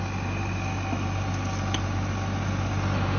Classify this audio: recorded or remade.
recorded